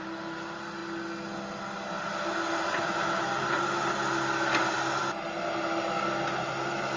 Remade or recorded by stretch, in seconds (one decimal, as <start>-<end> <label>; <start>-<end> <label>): 0.0-7.0 recorded